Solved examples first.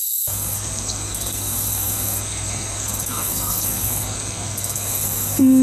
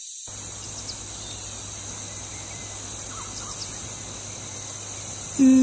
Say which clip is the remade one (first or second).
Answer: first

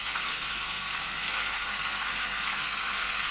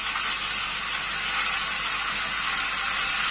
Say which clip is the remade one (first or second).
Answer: first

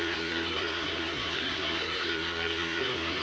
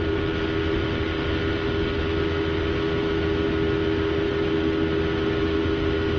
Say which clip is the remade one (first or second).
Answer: first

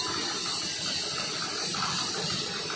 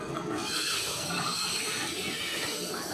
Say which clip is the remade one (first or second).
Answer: second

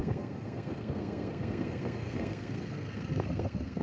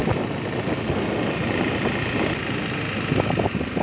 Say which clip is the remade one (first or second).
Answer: first